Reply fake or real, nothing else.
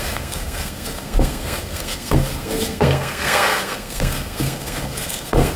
fake